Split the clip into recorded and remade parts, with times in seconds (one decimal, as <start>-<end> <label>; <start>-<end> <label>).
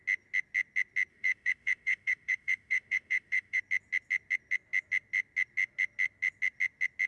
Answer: 0.0-1.1 recorded; 1.1-3.6 remade; 3.6-7.1 recorded